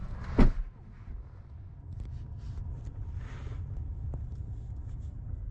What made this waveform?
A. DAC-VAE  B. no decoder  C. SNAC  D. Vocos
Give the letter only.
B